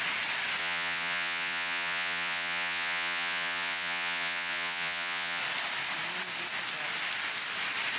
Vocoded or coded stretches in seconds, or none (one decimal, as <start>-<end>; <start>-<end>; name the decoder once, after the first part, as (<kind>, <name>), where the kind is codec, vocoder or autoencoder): 0.6-5.4 (vocoder, Vocos)